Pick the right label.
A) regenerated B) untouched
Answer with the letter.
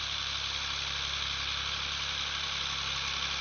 B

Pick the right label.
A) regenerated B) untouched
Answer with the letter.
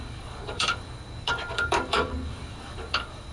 A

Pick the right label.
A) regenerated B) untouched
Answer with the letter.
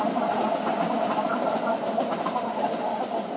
B